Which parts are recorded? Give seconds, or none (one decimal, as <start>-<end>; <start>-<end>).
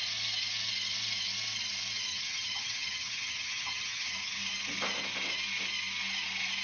0.0-2.1; 4.4-6.6